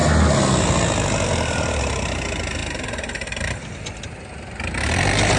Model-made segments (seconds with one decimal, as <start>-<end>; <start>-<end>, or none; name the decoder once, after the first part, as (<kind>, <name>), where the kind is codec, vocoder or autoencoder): 2.6-5.4 (vocoder, BigVGAN v2)